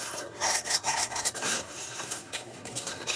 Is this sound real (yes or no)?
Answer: no